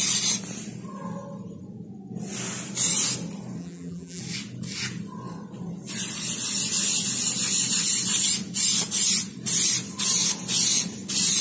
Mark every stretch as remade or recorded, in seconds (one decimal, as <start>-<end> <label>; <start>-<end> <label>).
0.0-3.6 recorded; 3.6-4.2 remade; 4.2-11.4 recorded